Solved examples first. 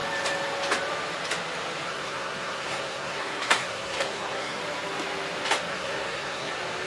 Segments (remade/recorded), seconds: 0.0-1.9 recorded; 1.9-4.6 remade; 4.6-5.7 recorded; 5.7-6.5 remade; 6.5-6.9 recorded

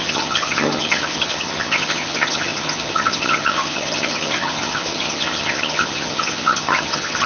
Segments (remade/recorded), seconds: 0.0-7.3 remade

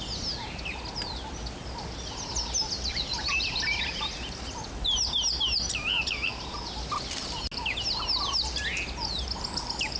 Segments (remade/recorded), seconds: 0.0-10.0 recorded